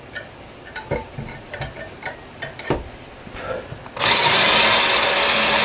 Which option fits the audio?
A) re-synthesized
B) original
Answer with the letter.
B